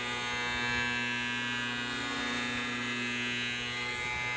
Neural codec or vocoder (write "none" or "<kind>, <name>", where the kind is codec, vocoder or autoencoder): none